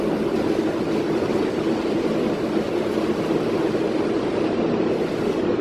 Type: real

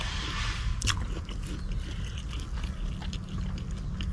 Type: real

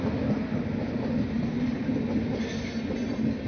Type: real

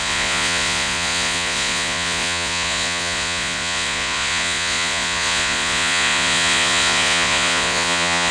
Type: fake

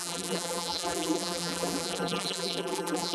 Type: fake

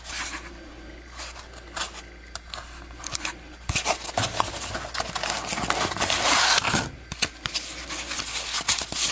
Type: real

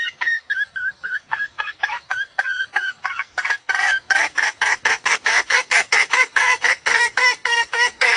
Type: fake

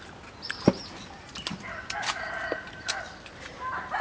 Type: real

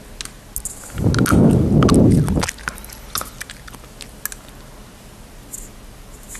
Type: real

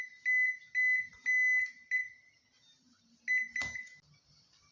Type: real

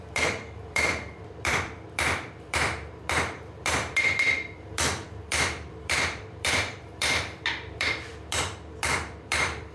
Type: fake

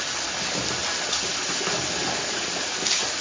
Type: real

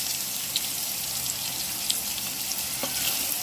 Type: fake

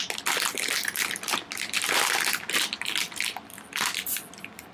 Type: real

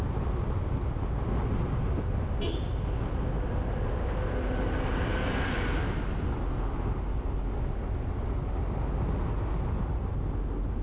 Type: real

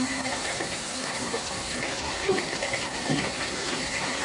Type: fake